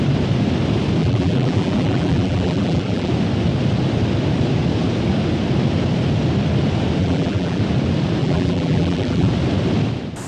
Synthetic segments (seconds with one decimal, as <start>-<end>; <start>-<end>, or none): 1.0-3.1; 7.0-7.6; 8.2-9.3